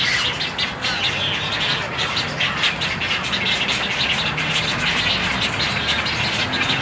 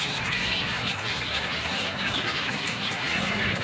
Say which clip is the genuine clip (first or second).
first